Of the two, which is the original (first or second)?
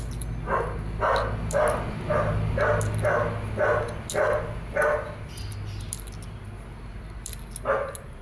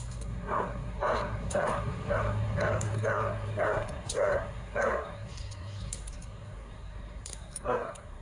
first